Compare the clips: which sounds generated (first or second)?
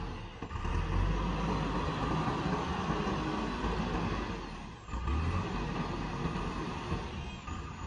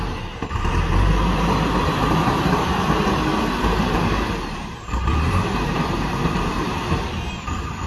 second